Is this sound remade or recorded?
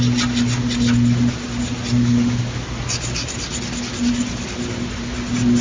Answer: recorded